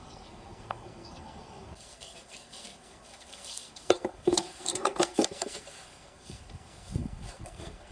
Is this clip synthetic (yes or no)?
yes